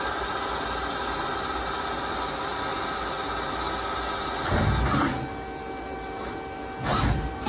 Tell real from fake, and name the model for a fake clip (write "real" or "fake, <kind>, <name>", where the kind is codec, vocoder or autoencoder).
real